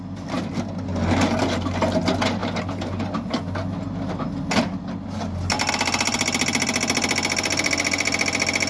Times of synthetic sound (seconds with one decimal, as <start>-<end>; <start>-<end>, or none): none